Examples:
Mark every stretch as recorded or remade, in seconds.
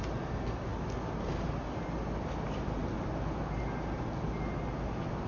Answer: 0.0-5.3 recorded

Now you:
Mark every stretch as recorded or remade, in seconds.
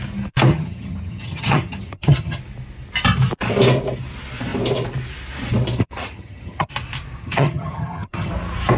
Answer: 0.0-0.5 recorded; 0.5-2.4 remade; 2.4-6.0 recorded; 6.0-6.7 remade; 6.7-7.2 recorded; 7.2-8.3 remade; 8.3-8.8 recorded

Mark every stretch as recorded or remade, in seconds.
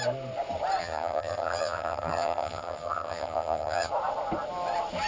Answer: 0.0-0.8 recorded; 0.8-3.9 remade; 3.9-5.1 recorded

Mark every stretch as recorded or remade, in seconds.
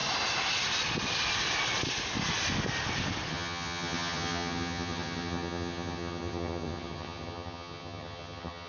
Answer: 0.0-3.3 recorded; 3.3-8.7 remade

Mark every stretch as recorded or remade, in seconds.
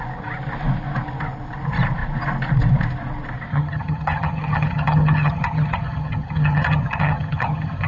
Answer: 0.0-3.5 recorded; 3.5-7.9 remade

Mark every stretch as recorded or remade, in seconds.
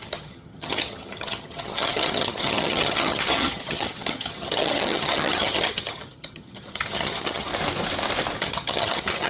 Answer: 0.0-7.5 remade; 7.5-8.4 recorded; 8.4-9.3 remade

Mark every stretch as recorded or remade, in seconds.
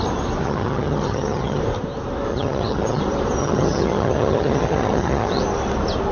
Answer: 0.0-0.4 recorded; 0.4-1.6 remade; 1.6-2.3 recorded; 2.3-3.0 remade; 3.0-3.4 recorded; 3.4-5.4 remade; 5.4-6.1 recorded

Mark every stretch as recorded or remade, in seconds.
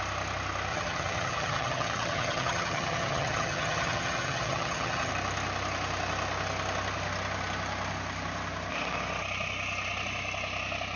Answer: 0.0-0.7 recorded; 0.7-5.1 remade; 5.1-11.0 recorded